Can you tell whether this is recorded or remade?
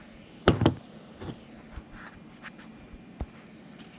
recorded